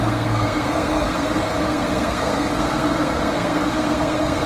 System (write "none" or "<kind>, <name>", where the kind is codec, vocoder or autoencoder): codec, SNAC